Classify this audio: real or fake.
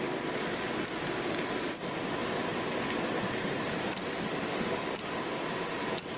real